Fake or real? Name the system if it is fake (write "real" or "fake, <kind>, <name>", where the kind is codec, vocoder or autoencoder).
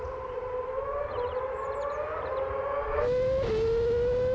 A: real